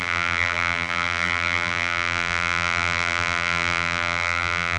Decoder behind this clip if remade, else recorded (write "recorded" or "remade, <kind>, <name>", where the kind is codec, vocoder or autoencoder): remade, vocoder, BigVGAN v2